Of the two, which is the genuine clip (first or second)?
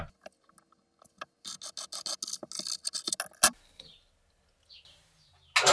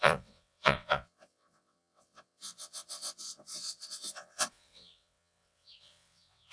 first